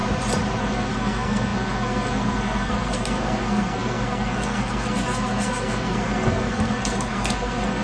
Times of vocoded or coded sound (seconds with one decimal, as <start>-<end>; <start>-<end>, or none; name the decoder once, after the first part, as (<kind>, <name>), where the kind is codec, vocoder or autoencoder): 0.6-7.8 (codec, SNAC)